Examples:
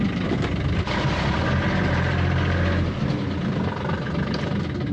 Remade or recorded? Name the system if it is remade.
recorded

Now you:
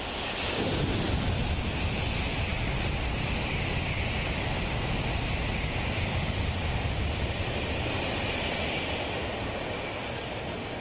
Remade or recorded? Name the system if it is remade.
recorded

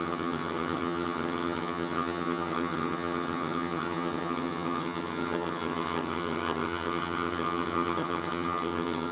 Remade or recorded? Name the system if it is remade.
remade, vocoder, HiFi-GAN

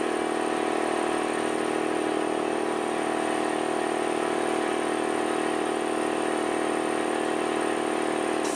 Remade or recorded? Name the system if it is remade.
recorded